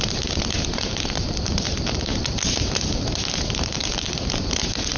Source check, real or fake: fake